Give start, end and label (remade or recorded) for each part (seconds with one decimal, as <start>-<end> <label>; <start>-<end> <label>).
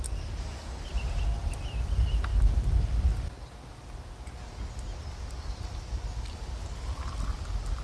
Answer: 0.0-7.8 recorded